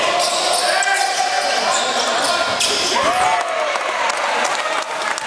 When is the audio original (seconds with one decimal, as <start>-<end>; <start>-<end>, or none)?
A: 0.0-1.5; 2.1-5.3

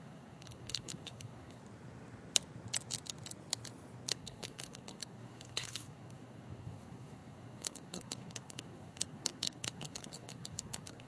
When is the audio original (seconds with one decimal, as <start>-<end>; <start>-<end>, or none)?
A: 1.6-4.1

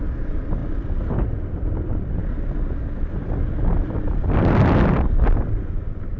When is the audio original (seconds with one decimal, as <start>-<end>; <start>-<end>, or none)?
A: 0.0-6.2

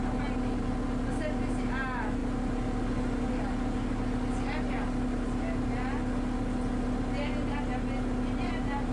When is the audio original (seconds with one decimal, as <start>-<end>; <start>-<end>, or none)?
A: 0.0-8.9

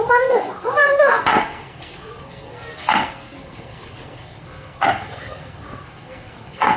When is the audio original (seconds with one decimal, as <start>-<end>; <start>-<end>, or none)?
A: none